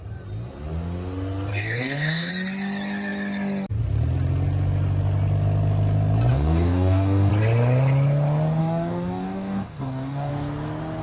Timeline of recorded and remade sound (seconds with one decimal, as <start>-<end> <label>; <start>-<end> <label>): 0.0-1.5 recorded; 1.5-2.3 remade; 2.3-6.3 recorded; 6.3-7.3 remade; 7.3-8.6 recorded; 8.6-10.3 remade; 10.3-11.0 recorded